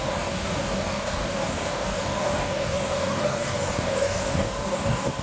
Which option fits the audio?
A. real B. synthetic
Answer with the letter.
B